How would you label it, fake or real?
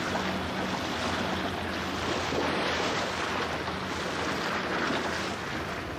real